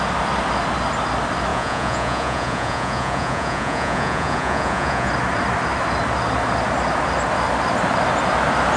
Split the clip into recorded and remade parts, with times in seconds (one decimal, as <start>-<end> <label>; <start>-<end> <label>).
0.0-1.5 recorded; 1.5-5.1 remade; 5.1-8.8 recorded